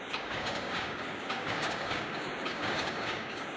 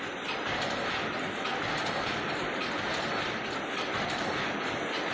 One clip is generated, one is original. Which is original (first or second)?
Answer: second